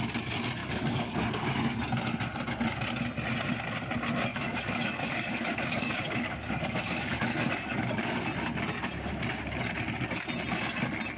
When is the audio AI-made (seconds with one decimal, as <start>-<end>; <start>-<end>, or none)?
0.6-1.8; 4.3-8.1